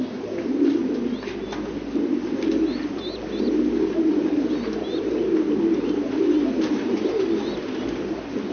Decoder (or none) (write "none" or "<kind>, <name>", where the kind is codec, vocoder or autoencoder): none